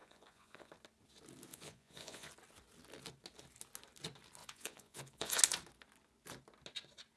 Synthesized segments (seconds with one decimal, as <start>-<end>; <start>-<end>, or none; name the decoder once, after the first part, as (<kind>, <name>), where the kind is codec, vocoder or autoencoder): 0.0-0.7 (vocoder, Vocos); 1.5-2.3; 4.4-5.4